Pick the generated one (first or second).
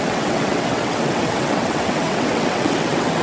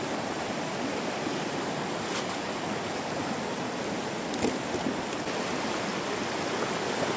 first